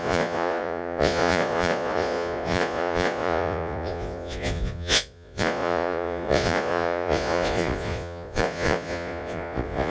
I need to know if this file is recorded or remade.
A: remade